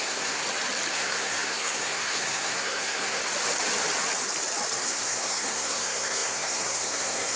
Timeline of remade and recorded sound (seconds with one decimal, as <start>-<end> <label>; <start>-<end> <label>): 0.0-0.4 remade; 0.4-0.9 recorded; 0.9-3.2 remade; 3.2-4.8 recorded; 4.8-7.4 remade

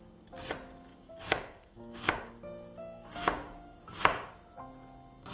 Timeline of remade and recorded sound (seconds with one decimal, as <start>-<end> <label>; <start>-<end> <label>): 0.0-0.9 recorded; 0.9-2.3 remade; 2.3-2.8 recorded; 2.8-4.3 remade; 4.3-5.3 recorded

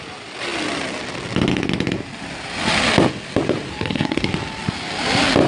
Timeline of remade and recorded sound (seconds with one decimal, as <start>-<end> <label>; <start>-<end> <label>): 0.0-3.7 recorded; 3.7-4.3 remade; 4.3-5.5 recorded

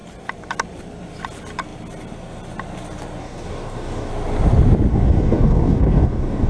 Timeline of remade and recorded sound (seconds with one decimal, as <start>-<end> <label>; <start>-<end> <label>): 0.0-3.2 recorded; 3.2-4.1 remade; 4.1-4.9 recorded; 4.9-6.5 remade